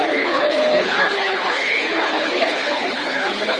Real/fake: fake